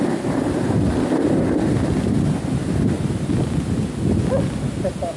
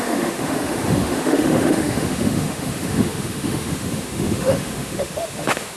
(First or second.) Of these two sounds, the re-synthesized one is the second